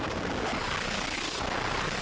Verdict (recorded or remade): remade